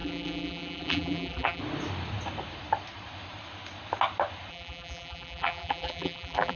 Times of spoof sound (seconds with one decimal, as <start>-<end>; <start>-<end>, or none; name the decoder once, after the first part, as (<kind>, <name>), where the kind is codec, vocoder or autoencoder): 0.0-1.6 (vocoder, BigVGAN v2); 4.5-6.6